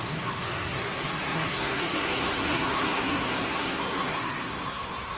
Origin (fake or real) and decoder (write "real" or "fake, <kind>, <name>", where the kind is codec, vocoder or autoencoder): fake, codec, SNAC